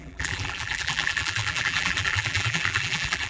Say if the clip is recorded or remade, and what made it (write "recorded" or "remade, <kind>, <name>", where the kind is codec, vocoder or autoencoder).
remade, vocoder, BigVGAN v2